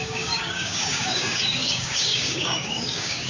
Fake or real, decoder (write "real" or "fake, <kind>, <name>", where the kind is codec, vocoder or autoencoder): fake, codec, DAC